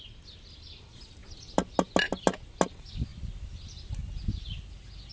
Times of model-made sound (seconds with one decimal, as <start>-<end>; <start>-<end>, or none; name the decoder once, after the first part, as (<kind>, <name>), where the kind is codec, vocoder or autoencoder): none